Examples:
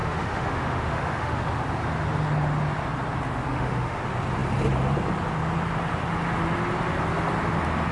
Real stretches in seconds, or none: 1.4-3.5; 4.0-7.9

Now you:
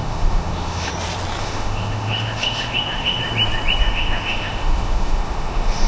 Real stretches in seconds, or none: 0.9-1.4; 3.2-3.8

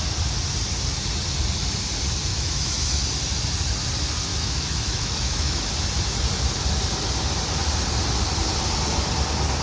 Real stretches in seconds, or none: 0.0-2.3; 3.0-4.3; 5.7-9.6

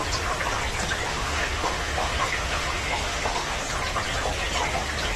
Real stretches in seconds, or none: 0.0-1.1; 3.6-5.2

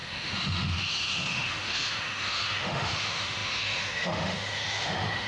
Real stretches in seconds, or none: none

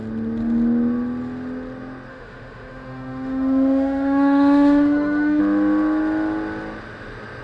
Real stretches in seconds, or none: 0.0-2.1; 5.4-7.4

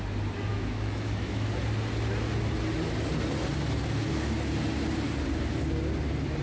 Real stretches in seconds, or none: 0.0-0.5; 1.5-6.4